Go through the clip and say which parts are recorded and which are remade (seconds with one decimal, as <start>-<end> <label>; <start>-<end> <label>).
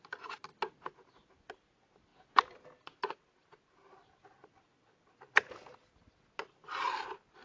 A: 0.0-7.4 recorded